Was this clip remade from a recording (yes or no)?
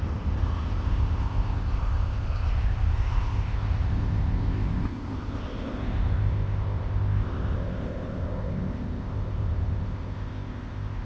yes